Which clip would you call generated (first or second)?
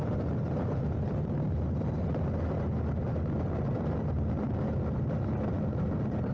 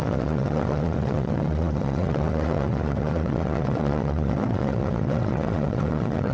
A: second